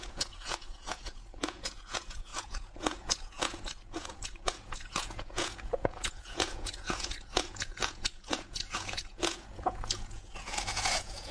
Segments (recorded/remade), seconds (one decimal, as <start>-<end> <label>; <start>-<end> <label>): 0.0-11.3 remade